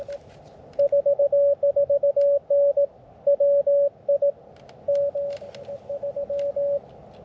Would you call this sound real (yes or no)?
yes